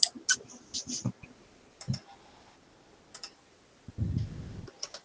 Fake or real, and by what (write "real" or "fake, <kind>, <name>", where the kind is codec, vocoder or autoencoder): real